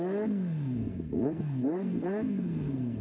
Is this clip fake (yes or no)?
yes